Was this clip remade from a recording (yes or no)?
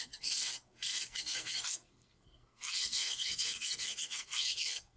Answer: yes